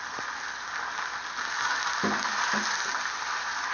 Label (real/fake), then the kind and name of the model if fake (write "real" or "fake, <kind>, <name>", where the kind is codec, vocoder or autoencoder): real